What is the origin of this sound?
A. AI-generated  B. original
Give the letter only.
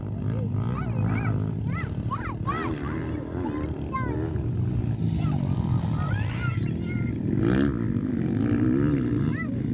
B